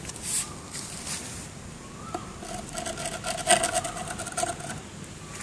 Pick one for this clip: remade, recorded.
recorded